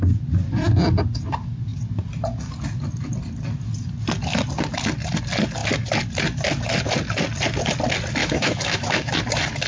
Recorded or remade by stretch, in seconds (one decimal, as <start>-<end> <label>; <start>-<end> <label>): 0.0-8.2 recorded; 8.2-9.1 remade; 9.1-9.7 recorded